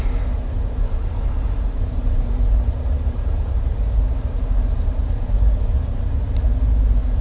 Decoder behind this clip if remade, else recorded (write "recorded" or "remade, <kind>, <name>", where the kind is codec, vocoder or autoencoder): remade, vocoder, BigVGAN v2